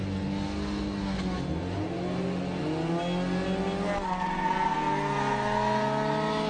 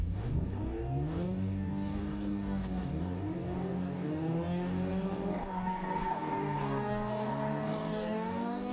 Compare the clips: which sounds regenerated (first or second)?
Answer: second